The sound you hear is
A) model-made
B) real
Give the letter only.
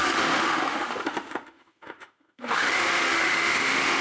A